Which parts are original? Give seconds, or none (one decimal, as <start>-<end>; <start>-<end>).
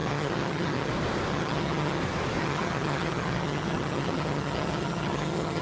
0.9-1.3; 2.0-2.4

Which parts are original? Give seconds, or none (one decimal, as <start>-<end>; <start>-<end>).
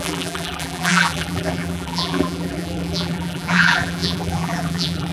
none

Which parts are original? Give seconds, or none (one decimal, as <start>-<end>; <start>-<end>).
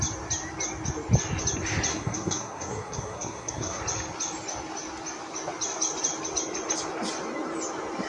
0.0-1.9; 3.8-8.1